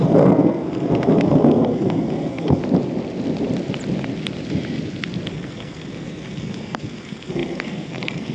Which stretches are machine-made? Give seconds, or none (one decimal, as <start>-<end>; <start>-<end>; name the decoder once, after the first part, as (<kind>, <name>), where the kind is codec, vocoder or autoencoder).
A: 0.0-2.6 (codec, SNAC); 5.3-8.3